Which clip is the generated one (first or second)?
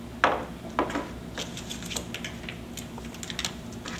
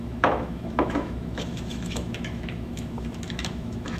second